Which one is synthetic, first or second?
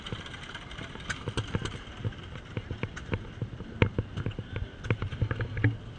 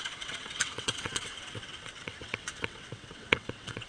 second